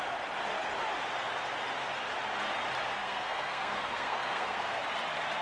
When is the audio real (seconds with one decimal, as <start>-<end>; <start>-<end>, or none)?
0.0-3.0; 4.8-5.4